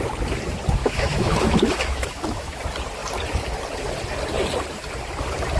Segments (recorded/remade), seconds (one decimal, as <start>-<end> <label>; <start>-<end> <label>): 0.0-0.8 recorded; 0.8-2.6 remade; 2.6-5.6 recorded